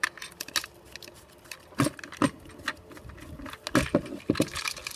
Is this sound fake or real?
real